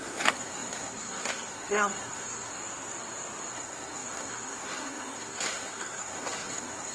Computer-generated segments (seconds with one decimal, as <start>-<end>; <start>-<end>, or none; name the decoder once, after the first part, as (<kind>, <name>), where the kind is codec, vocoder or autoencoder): 0.0-2.5 (codec, SNAC); 3.5-6.9